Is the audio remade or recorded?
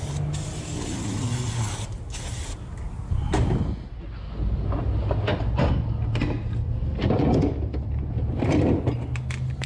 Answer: recorded